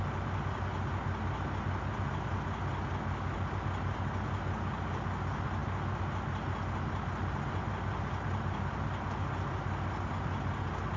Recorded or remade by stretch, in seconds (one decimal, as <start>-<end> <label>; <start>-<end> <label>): 0.0-11.0 recorded